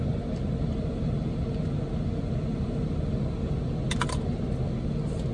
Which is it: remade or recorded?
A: recorded